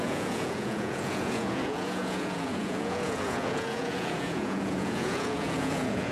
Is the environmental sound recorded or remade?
remade